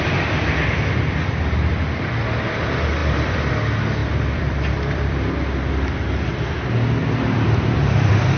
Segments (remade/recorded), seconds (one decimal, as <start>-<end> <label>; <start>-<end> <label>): 0.0-3.0 recorded; 3.0-3.5 remade; 3.5-4.0 recorded; 4.0-5.3 remade; 5.3-7.0 recorded; 7.0-8.4 remade